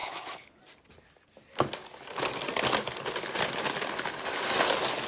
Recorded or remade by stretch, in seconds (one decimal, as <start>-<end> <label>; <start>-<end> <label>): 0.0-0.6 remade; 0.6-5.1 recorded